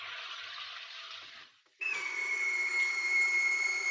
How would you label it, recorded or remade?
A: recorded